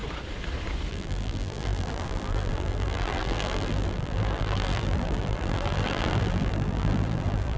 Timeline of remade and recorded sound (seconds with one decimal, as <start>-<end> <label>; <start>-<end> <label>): 0.0-0.9 recorded; 0.9-7.6 remade